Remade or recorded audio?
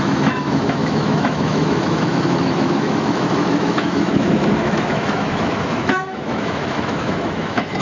remade